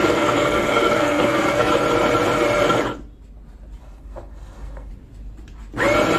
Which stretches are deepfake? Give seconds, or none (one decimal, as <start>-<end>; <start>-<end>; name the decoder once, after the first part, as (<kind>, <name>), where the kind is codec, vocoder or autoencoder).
0.0-1.7 (codec, SNAC); 3.8-4.9